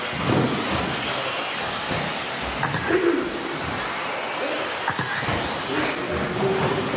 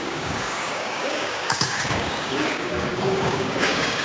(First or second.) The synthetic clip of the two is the second